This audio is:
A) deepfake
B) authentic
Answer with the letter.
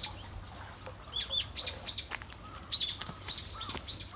B